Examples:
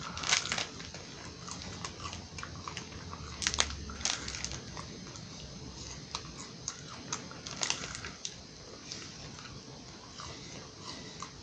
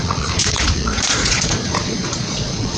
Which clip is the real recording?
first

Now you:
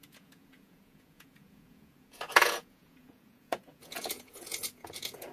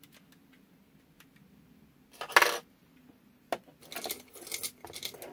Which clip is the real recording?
second